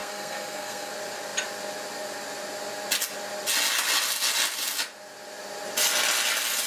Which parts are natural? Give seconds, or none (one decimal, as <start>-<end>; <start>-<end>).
0.9-6.7